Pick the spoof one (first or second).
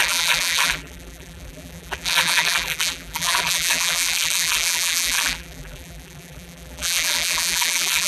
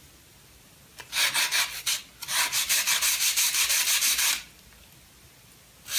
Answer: first